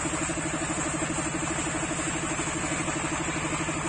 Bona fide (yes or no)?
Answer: yes